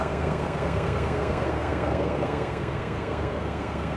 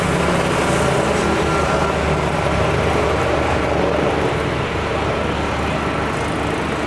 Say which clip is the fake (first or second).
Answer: first